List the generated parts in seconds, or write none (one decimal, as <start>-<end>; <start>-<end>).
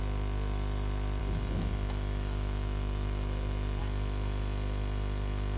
1.2-3.8